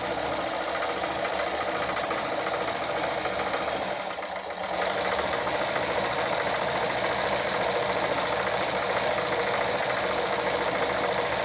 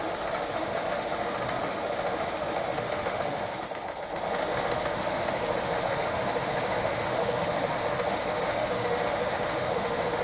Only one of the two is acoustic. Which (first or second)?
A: first